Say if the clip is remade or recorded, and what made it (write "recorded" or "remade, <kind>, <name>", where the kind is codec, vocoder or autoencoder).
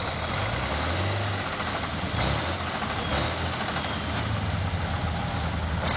recorded